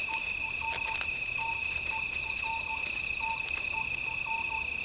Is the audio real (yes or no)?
yes